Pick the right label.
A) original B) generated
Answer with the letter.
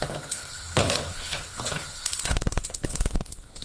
B